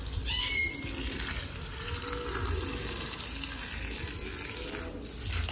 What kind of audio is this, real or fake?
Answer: real